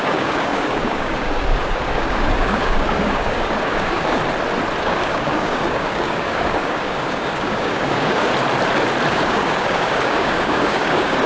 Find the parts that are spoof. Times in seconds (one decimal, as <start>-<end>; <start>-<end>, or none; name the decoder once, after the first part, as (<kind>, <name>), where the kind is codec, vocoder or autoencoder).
0.0-4.2 (codec, DAC); 4.8-8.3; 9.1-11.3